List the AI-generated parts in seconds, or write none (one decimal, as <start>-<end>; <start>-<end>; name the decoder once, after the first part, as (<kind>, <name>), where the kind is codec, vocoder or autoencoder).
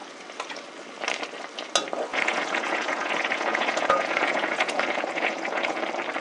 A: 2.1-5.8 (vocoder, Vocos)